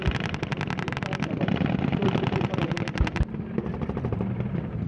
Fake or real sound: real